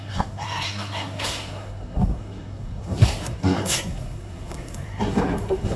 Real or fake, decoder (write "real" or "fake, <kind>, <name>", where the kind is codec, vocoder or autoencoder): fake, codec, SNAC